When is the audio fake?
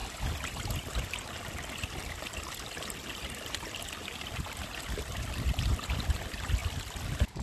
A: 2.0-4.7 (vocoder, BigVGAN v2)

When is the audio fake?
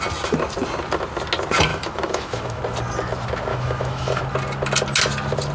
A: 1.7-2.6 (autoencoder, DAC-VAE); 3.5-4.2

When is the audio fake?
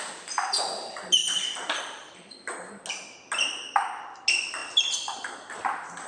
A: none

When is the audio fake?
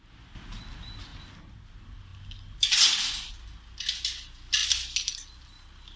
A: none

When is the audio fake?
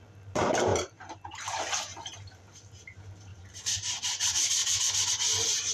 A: 0.7-1.6 (vocoder, BigVGAN v2); 3.3-4.0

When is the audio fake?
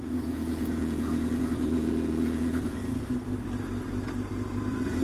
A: 0.0-2.8 (vocoder, Vocos)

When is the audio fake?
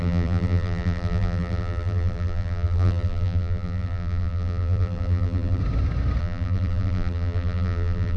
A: 0.0-5.6 (vocoder, BigVGAN v2); 6.2-8.2